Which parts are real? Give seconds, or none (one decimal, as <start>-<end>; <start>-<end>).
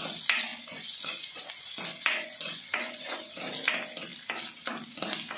0.0-0.5; 3.3-5.4